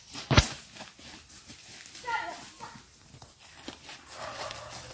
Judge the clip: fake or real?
real